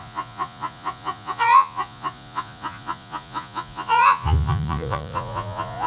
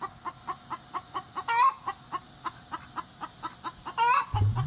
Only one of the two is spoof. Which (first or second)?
first